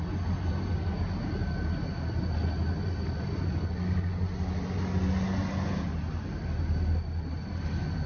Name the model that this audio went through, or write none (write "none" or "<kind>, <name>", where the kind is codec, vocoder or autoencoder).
none